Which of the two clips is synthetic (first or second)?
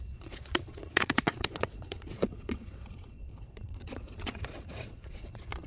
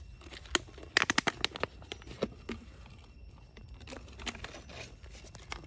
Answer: first